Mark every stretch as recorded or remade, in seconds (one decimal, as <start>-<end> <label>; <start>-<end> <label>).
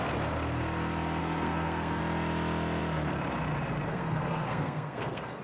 0.0-1.2 recorded; 1.2-2.0 remade; 2.0-3.9 recorded; 3.9-5.4 remade